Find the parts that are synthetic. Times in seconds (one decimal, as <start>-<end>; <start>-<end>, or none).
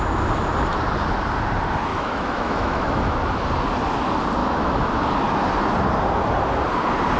1.9-3.0; 4.4-4.9